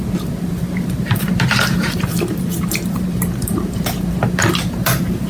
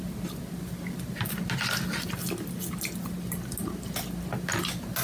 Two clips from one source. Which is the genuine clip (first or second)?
second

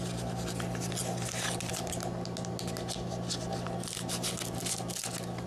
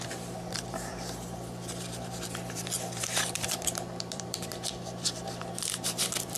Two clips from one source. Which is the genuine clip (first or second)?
first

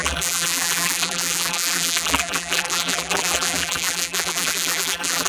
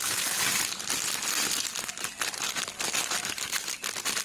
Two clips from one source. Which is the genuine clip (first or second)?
second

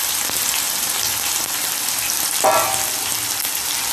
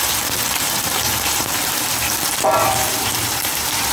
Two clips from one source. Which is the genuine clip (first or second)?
first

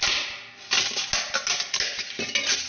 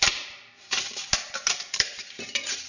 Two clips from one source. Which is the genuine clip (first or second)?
first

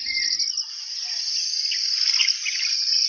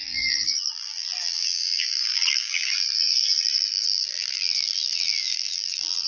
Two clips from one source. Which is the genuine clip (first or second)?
first